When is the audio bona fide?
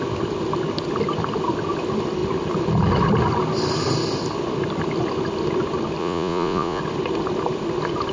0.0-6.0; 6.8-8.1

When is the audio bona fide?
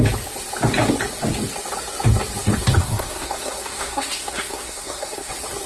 0.0-2.8; 5.3-5.7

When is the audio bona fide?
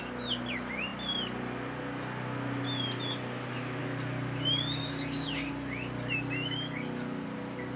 0.0-4.8; 5.5-7.8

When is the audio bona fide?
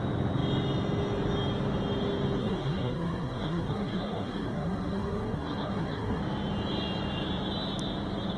0.0-2.4; 6.2-8.4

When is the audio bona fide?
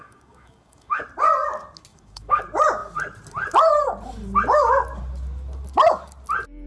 1.0-1.9; 2.4-6.7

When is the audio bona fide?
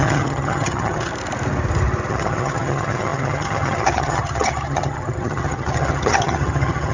1.1-2.1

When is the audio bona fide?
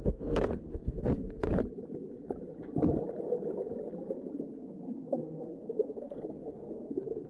1.6-4.5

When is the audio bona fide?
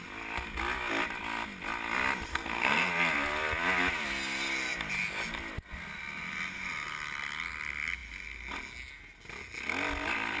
0.0-2.3; 2.9-10.4